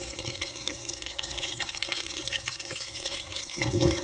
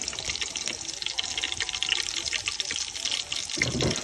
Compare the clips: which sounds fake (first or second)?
first